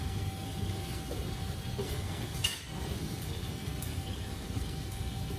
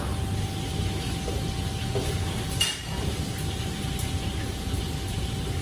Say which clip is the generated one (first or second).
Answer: first